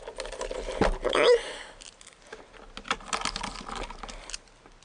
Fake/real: real